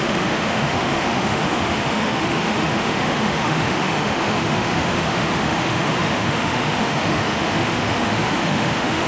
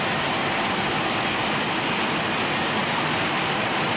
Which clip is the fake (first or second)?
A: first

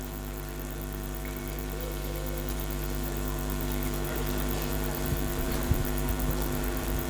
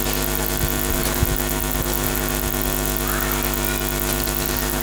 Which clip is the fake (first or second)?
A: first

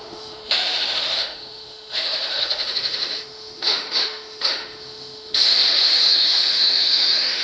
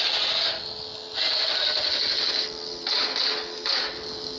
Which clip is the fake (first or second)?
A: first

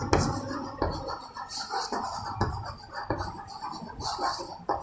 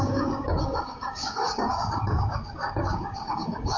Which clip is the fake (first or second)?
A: second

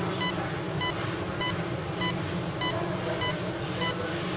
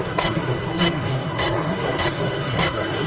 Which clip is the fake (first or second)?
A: second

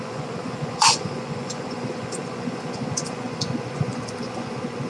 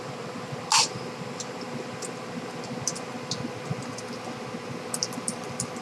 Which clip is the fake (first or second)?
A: first